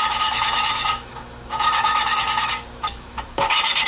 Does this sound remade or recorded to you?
remade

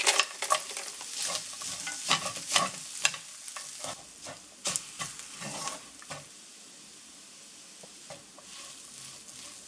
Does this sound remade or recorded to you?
recorded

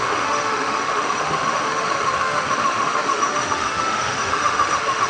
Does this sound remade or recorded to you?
remade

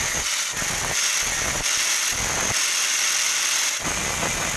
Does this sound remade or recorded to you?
recorded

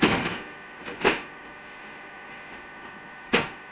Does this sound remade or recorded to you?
remade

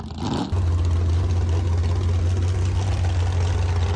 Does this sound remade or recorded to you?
recorded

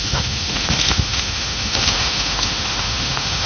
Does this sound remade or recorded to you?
remade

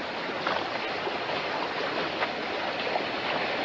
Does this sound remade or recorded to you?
recorded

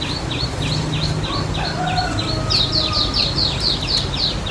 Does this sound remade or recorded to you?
recorded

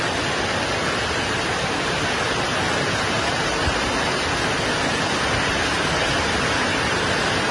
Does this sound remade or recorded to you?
recorded